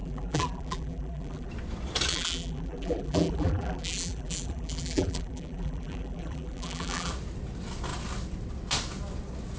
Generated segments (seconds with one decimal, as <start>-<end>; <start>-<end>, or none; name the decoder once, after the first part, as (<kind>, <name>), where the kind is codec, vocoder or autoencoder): 0.0-1.5 (vocoder, BigVGAN v2); 2.1-7.1